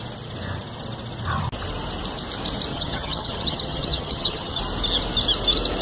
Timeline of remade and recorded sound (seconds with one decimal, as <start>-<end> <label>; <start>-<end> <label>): 0.0-2.7 recorded; 2.7-4.6 remade; 4.6-5.8 recorded